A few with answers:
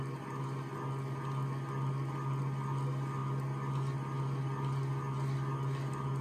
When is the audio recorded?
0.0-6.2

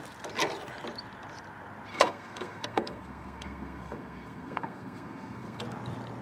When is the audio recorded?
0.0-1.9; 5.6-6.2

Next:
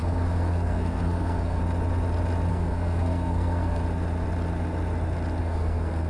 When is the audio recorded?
1.6-2.5; 3.8-5.4

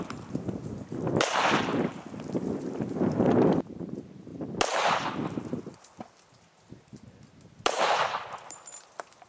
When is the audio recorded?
0.0-9.3

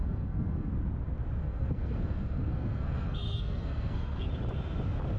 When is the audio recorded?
0.7-1.4; 4.3-5.2